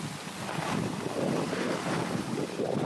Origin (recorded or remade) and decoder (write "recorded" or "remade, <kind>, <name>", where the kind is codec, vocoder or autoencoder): recorded